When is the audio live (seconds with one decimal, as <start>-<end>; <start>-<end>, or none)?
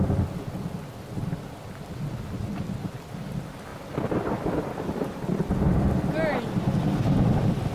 0.0-7.7